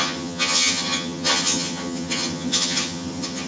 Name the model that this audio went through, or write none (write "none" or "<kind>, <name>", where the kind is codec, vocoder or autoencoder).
vocoder, HiFi-GAN